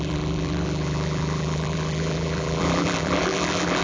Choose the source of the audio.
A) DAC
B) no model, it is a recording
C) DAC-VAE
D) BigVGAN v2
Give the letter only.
D